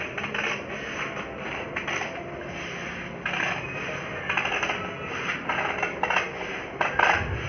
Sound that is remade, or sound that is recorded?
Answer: recorded